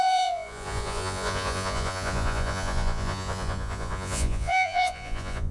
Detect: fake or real fake